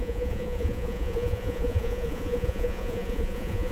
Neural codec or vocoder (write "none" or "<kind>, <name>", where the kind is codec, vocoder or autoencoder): vocoder, Vocos